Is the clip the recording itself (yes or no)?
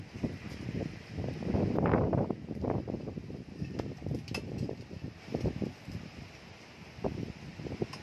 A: yes